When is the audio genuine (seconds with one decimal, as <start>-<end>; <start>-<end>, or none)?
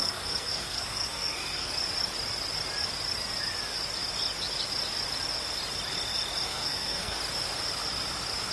1.7-6.5; 7.2-8.5